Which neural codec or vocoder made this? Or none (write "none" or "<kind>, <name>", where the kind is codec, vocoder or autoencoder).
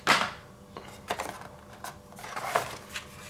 none